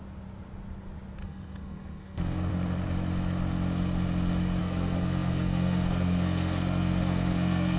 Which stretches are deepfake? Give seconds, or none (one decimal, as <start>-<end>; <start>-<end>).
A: 1.2-2.5; 4.6-7.8